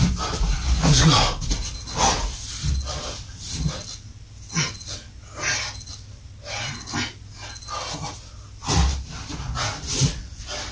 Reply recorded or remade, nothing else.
recorded